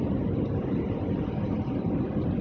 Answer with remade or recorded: recorded